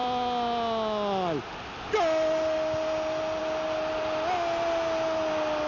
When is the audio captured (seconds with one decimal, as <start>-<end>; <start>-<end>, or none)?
0.0-5.7